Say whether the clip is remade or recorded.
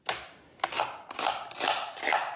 recorded